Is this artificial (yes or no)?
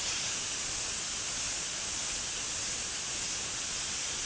no